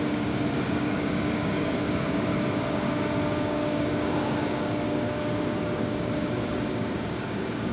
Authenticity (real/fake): fake